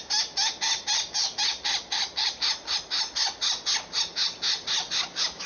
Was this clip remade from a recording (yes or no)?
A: no